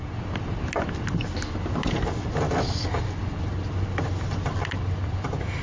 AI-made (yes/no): no